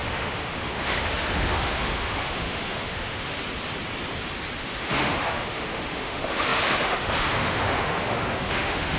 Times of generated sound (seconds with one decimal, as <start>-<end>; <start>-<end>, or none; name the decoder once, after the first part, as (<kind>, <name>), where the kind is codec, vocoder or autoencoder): 0.0-3.4 (autoencoder, DAC-VAE); 4.6-9.0